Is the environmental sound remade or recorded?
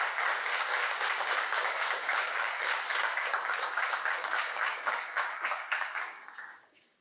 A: remade